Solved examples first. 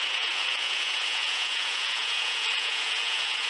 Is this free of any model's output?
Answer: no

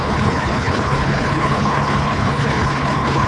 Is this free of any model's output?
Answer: no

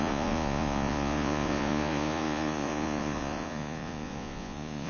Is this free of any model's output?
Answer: no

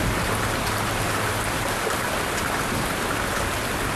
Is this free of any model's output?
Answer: yes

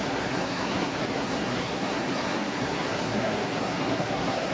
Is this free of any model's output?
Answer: no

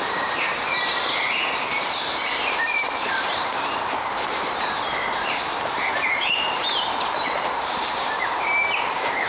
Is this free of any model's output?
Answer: no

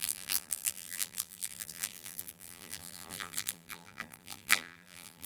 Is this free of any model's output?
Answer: no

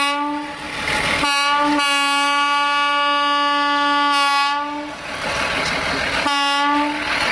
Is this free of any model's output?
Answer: yes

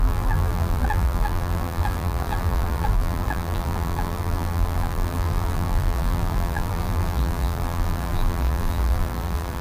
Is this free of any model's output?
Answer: no